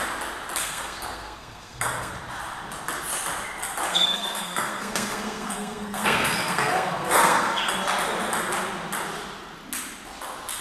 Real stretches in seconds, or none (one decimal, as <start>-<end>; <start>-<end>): 0.0-0.6; 2.1-3.9; 7.7-10.6